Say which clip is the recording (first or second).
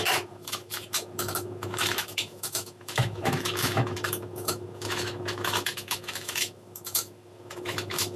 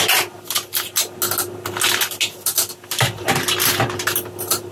second